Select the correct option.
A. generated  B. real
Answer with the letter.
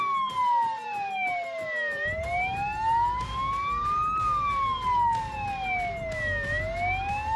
B